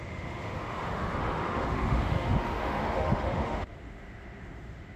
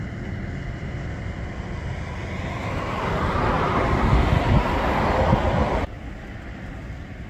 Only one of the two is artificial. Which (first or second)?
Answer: first